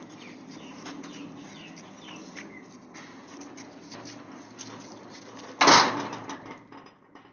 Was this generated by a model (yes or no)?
no